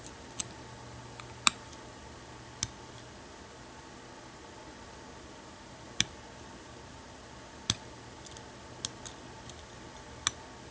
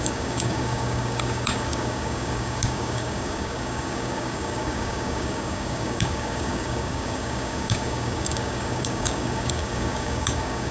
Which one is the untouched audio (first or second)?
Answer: first